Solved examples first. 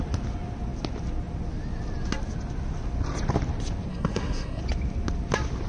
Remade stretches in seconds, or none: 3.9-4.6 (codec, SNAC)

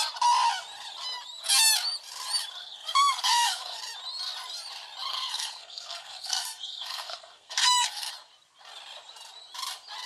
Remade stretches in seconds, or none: 2.6-3.8 (codec, SNAC); 5.1-8.1

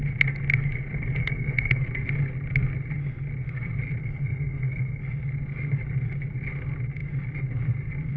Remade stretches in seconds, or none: 1.2-1.8 (codec, SNAC); 4.0-5.0

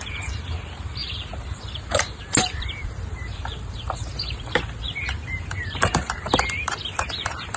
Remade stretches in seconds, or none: 0.0-7.6 (vocoder, BigVGAN v2)

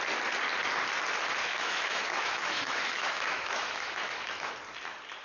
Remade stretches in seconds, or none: 1.4-4.5 (autoencoder, DAC-VAE)

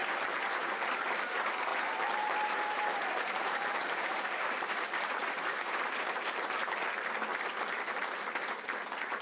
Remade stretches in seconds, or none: 1.7-5.3 (vocoder, BigVGAN v2)

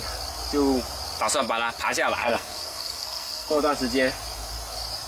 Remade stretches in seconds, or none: 2.2-3.6 (codec, SNAC)